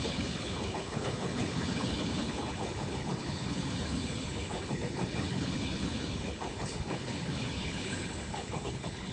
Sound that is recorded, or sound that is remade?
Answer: remade